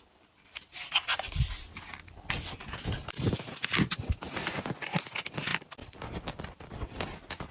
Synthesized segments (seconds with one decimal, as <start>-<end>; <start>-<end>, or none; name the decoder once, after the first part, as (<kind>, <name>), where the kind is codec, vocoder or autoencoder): none

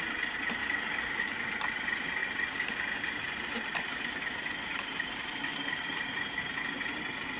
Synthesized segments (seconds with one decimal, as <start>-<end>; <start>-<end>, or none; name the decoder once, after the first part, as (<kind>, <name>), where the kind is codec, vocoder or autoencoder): 0.6-1.2 (vocoder, BigVGAN v2); 2.2-4.2; 4.7-6.6

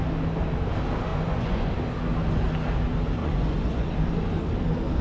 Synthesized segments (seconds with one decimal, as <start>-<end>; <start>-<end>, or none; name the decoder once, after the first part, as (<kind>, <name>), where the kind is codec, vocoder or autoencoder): 1.1-1.7 (vocoder, Vocos); 3.2-3.9

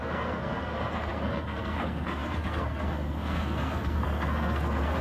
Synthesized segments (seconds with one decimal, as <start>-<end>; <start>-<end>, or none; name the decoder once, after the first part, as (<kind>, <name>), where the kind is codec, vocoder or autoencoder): 0.0-5.0 (codec, SNAC)

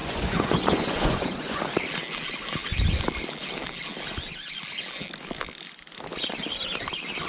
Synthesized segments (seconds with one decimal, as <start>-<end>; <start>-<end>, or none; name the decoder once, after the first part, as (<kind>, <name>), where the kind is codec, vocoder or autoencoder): 0.0-1.6 (vocoder, Vocos)

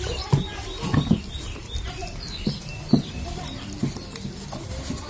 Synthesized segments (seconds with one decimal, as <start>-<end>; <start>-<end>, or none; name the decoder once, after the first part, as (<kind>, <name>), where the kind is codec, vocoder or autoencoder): 0.5-3.6 (vocoder, BigVGAN v2)

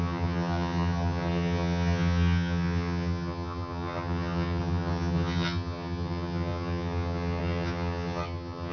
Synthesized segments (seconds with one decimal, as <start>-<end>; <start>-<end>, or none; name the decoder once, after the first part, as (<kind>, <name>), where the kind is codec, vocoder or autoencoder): 0.0-8.7 (vocoder, HiFi-GAN)

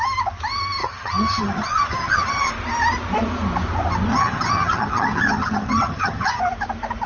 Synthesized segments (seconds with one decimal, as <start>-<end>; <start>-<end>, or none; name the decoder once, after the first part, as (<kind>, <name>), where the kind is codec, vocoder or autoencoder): 0.8-2.5 (vocoder, HiFi-GAN); 4.1-6.4